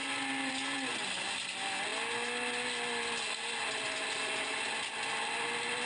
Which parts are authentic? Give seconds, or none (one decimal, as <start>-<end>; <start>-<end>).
0.0-5.9